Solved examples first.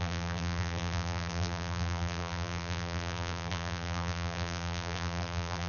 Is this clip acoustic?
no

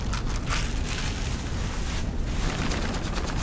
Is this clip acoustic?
yes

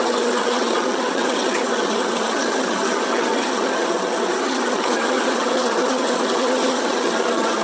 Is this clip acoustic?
no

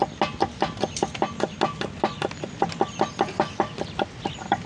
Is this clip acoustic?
yes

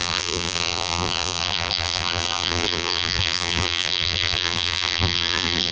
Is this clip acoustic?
no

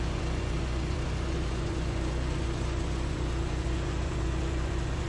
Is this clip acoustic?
no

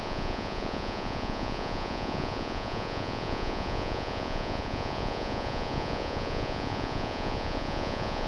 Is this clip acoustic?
no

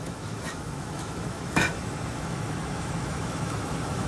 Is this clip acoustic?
no